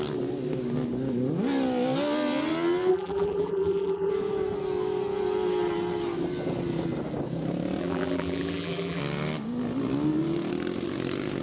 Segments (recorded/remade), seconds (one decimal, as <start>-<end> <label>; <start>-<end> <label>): 0.0-2.9 recorded; 2.9-4.1 remade; 4.1-7.8 recorded; 7.8-9.0 remade; 9.0-11.4 recorded